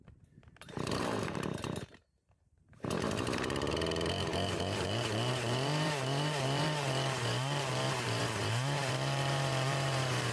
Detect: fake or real fake